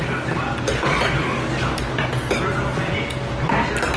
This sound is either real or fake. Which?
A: real